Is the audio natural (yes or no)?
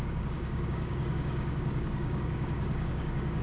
no